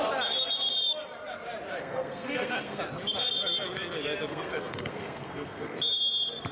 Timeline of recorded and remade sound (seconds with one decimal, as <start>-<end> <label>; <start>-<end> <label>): 0.0-1.8 recorded; 1.8-2.8 remade; 2.8-4.3 recorded; 4.3-5.8 remade; 5.8-6.5 recorded